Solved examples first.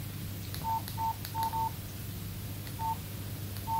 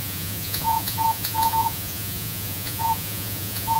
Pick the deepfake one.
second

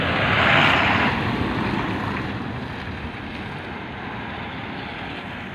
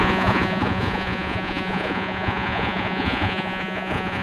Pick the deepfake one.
second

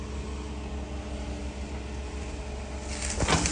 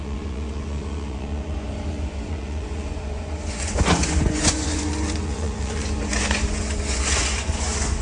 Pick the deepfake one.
second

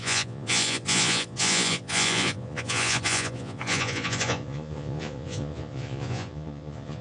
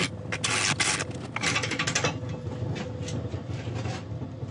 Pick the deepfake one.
first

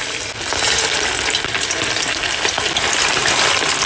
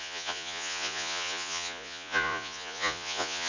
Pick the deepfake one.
second